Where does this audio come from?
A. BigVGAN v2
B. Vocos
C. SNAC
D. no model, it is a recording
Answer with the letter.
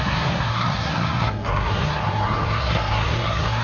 C